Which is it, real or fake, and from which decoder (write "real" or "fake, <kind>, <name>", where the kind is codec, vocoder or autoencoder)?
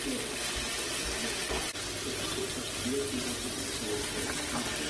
real